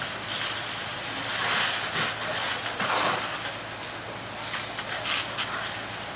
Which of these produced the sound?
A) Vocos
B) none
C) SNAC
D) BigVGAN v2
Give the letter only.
B